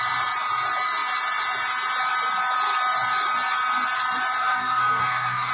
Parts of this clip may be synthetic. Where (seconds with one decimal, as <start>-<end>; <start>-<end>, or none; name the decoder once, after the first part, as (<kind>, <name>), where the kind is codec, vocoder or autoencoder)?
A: 4.4-5.5 (codec, SNAC)